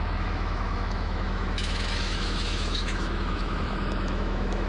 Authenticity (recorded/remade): remade